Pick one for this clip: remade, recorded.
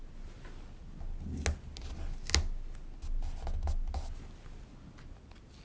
recorded